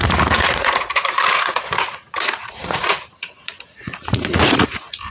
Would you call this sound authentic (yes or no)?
no